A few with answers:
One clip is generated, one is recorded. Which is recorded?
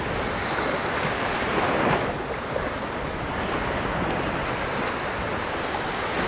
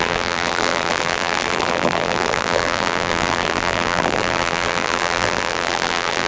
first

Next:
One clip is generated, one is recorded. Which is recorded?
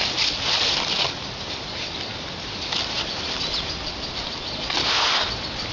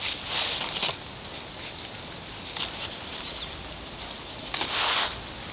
second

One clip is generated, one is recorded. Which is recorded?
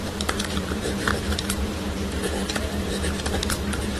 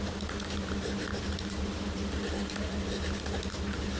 second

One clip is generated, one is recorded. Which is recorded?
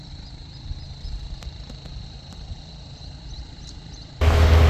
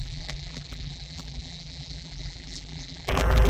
first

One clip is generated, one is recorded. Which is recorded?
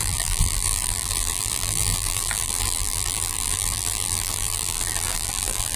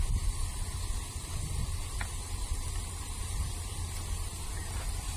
second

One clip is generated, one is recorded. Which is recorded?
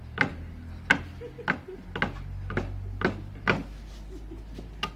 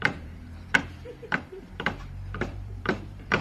first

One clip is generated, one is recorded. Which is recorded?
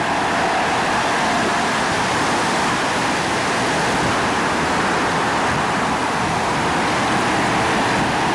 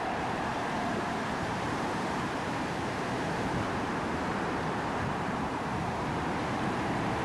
first